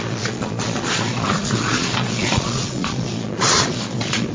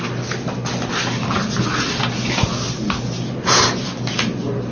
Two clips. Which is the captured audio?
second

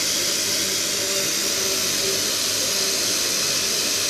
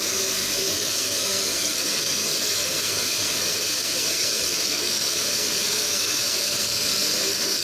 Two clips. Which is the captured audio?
first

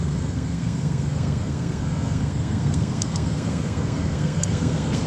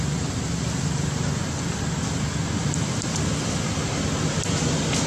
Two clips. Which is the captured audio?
second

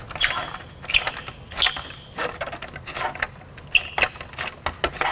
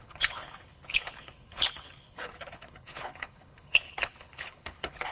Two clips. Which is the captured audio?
first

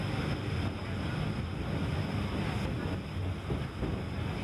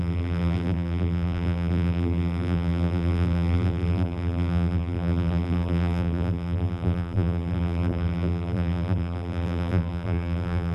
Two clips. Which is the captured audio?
first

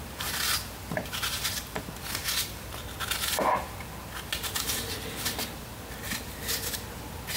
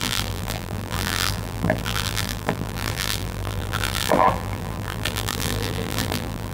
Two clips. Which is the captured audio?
first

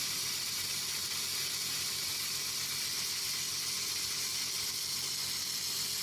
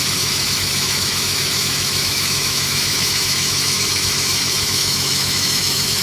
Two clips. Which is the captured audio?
first